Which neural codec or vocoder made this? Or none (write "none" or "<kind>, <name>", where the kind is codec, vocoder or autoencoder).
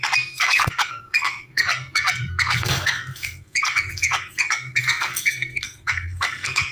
codec, SNAC